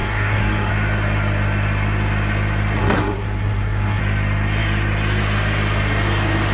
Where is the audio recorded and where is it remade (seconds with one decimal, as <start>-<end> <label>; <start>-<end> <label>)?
0.0-0.7 remade; 0.7-2.8 recorded; 2.8-4.0 remade; 4.0-6.5 recorded